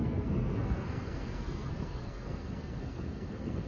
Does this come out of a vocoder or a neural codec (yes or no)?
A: yes